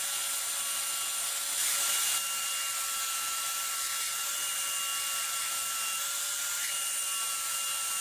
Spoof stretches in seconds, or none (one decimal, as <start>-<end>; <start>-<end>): none